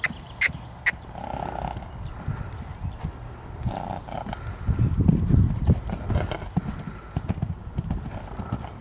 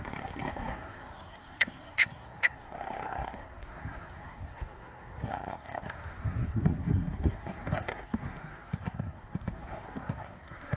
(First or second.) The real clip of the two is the first